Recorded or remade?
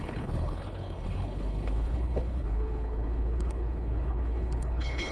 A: remade